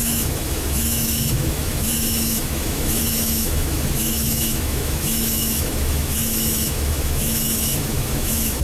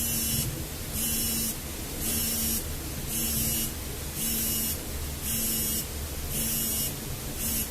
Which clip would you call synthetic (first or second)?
first